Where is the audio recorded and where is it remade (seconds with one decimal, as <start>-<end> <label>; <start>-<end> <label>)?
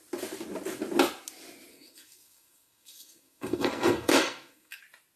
0.0-1.7 recorded; 1.7-4.8 remade; 4.8-5.2 recorded